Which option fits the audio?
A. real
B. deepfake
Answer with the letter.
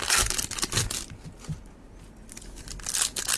A